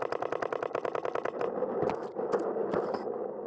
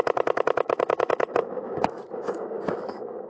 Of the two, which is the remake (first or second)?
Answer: second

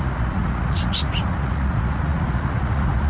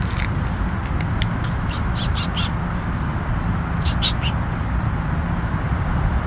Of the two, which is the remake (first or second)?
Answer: first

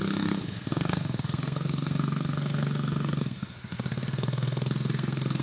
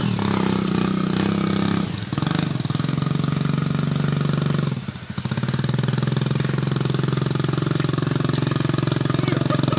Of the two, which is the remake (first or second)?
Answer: first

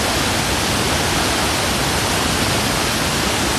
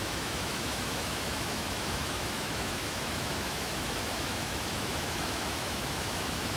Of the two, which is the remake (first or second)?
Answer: second